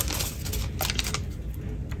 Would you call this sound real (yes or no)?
yes